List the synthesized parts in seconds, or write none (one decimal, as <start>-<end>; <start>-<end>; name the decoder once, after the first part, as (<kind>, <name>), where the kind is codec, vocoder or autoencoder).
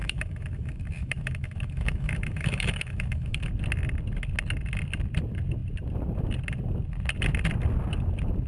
0.0-3.5 (autoencoder, DAC-VAE)